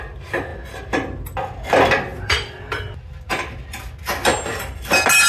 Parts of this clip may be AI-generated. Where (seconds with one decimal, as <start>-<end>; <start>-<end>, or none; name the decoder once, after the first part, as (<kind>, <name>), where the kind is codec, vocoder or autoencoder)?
2.1-3.2 (vocoder, BigVGAN v2); 4.3-4.8